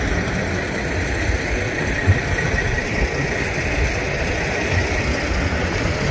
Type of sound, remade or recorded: recorded